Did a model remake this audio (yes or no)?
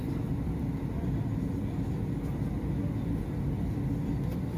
no